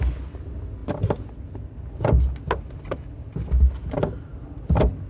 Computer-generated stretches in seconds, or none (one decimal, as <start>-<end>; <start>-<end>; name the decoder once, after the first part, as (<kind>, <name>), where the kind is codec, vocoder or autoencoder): none